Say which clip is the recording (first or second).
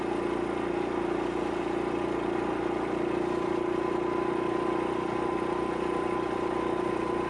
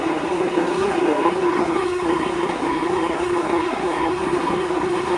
first